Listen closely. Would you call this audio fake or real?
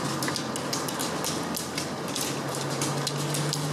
real